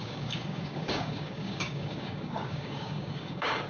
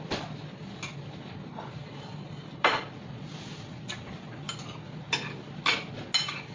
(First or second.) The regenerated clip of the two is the first